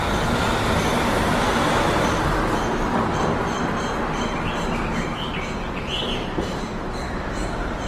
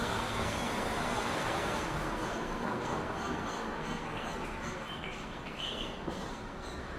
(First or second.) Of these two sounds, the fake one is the second